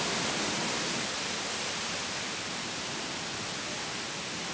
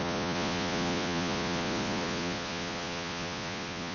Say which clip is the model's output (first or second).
second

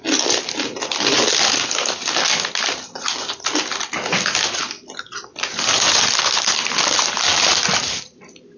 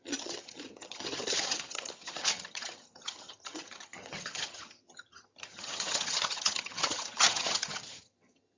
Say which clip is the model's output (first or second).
second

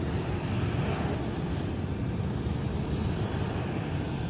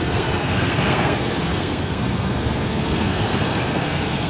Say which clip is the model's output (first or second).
second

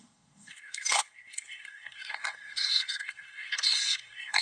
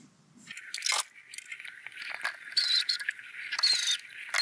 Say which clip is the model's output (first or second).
first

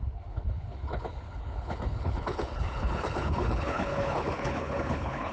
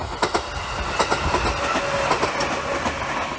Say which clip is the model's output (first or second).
first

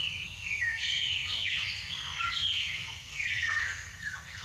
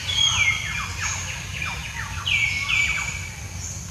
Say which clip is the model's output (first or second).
first